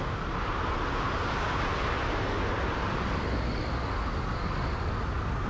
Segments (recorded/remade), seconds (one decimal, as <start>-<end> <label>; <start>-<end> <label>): 0.0-5.5 recorded